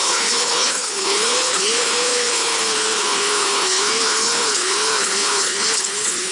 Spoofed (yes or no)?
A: yes